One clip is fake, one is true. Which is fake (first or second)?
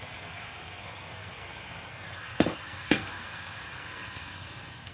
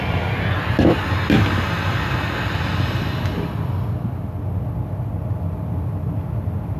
first